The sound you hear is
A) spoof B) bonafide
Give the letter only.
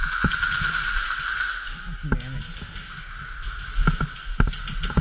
B